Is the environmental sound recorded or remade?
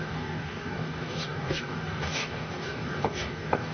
remade